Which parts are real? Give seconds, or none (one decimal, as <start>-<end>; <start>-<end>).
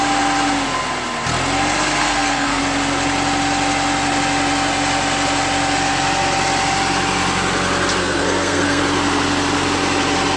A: 0.0-2.0; 2.6-8.0; 8.8-10.4